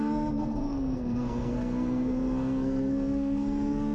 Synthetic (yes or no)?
yes